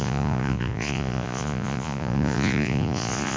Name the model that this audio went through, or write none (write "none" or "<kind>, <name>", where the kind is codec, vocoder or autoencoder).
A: vocoder, Vocos